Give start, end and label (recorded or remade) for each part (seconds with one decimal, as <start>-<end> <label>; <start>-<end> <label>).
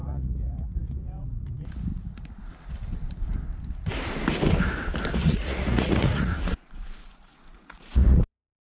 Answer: 0.0-1.5 remade; 1.5-1.9 recorded; 1.9-2.5 remade; 2.5-5.2 recorded; 5.2-8.7 remade